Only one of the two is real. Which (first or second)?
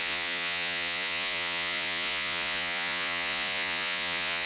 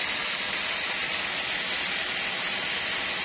second